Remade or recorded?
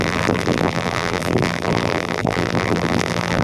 remade